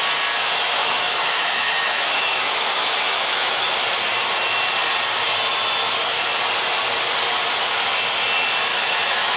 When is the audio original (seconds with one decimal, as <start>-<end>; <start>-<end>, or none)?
0.0-0.8; 3.7-8.7